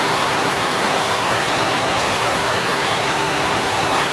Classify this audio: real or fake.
fake